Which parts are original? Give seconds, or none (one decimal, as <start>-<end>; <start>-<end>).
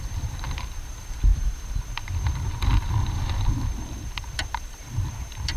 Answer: none